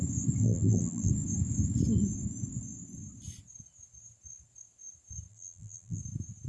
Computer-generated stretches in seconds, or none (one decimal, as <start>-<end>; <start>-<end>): 0.4-1.1; 5.3-6.0